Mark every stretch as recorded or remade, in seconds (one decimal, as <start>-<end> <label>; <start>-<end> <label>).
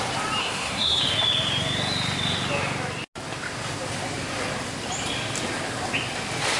0.0-0.4 recorded; 0.4-1.0 remade; 1.0-6.6 recorded